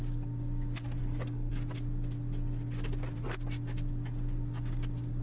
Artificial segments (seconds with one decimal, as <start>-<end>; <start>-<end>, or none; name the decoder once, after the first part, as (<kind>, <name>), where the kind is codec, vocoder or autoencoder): 1.0-1.5 (codec, SNAC)